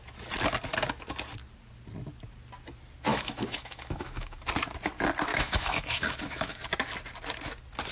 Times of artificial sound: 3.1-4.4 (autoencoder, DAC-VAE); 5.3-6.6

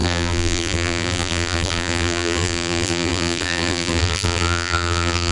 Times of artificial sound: 0.0-5.3 (vocoder, BigVGAN v2)

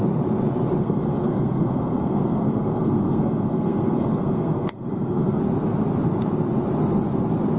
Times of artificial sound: 0.8-5.4 (codec, SNAC)

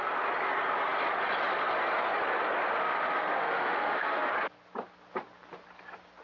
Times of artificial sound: 2.8-4.3 (autoencoder, DAC-VAE)

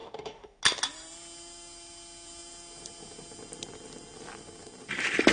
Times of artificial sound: 0.0-0.6 (autoencoder, DAC-VAE)

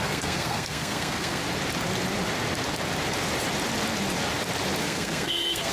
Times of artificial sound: 0.0-1.4 (codec, SNAC); 4.8-5.7

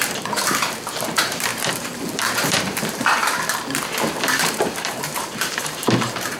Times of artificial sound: 0.0-3.2 (vocoder, BigVGAN v2); 4.1-6.4